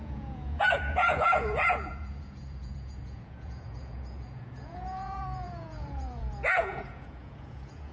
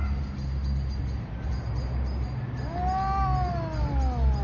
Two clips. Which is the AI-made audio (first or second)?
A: first